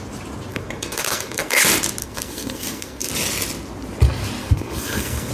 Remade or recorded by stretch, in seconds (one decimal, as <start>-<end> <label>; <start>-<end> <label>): 0.0-0.5 recorded; 0.5-1.6 remade; 1.6-2.0 recorded; 2.0-3.1 remade; 3.1-4.4 recorded; 4.4-5.3 remade